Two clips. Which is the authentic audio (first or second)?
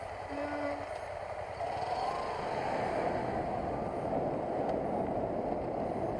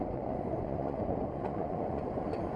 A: first